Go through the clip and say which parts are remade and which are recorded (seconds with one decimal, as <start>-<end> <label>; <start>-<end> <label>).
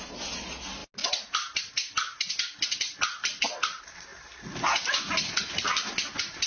0.0-6.5 recorded